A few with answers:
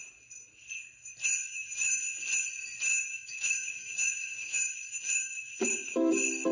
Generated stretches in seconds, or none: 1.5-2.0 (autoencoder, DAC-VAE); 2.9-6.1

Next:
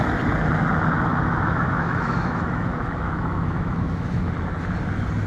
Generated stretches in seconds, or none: 1.1-4.3 (autoencoder, DAC-VAE)